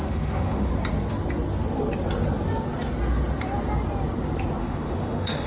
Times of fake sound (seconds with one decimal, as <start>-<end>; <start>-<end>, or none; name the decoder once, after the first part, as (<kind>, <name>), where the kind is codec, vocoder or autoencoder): 0.0-0.7 (autoencoder, DAC-VAE); 4.6-5.5